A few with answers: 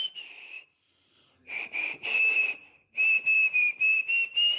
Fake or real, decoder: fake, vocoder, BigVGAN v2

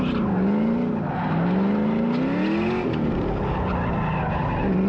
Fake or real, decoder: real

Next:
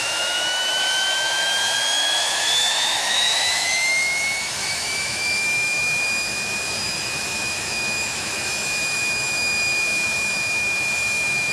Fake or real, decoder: fake, autoencoder, DAC-VAE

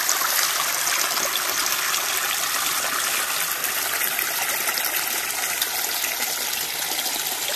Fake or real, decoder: real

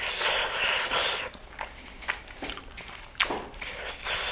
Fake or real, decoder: fake, vocoder, BigVGAN v2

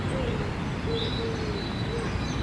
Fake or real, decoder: real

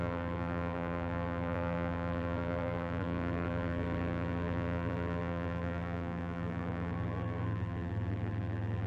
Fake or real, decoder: fake, vocoder, BigVGAN v2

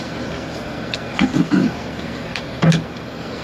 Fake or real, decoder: fake, codec, SNAC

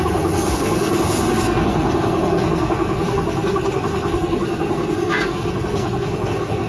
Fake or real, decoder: fake, codec, SNAC